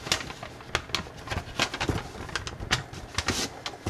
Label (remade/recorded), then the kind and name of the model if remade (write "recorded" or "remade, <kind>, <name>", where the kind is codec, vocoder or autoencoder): recorded